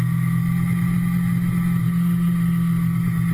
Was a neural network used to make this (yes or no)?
no